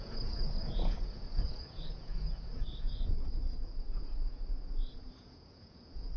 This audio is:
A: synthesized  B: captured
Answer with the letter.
A